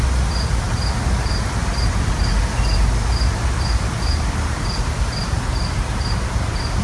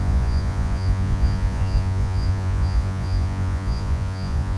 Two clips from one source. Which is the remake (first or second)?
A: second